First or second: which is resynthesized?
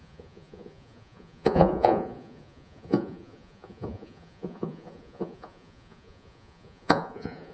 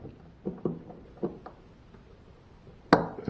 first